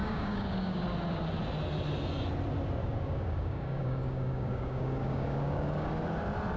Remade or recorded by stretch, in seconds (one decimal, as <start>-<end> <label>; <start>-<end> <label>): 0.0-0.8 remade; 0.8-2.8 recorded; 2.8-5.9 remade; 5.9-6.6 recorded